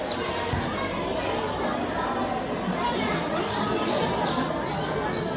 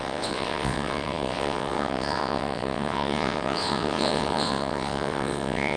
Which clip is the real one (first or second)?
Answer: first